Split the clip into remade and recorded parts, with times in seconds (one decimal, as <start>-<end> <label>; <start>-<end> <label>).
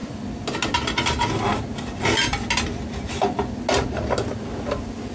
0.0-5.1 recorded